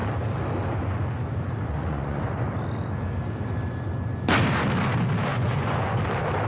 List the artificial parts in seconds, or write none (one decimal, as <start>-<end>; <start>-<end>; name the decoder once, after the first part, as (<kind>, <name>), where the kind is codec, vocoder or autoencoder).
1.7-2.5 (vocoder, Vocos); 5.3-6.0